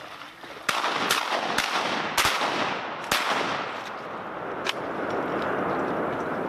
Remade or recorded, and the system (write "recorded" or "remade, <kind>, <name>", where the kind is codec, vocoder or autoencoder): recorded